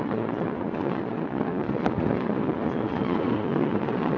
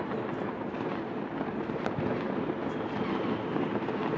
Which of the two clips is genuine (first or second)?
second